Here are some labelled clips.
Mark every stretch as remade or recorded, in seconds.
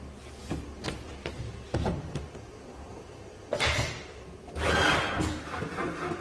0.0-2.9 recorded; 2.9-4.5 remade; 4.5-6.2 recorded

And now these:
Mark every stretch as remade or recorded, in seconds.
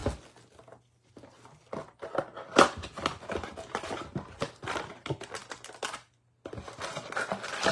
0.0-7.7 recorded